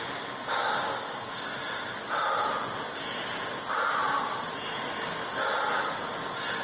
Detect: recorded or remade recorded